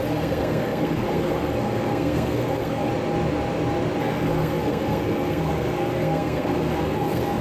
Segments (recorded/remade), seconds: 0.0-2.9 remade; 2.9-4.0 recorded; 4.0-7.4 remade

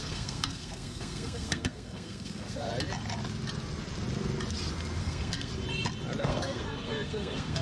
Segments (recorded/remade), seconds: 0.0-2.7 remade; 2.7-5.0 recorded; 5.0-5.5 remade; 5.5-6.2 recorded; 6.2-7.6 remade